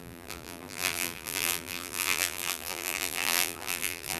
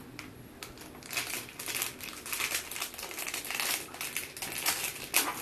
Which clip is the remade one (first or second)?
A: first